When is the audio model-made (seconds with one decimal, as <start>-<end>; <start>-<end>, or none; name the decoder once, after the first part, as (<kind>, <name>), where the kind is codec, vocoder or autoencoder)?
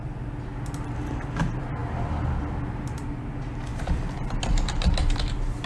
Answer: 3.7-4.7 (vocoder, BigVGAN v2)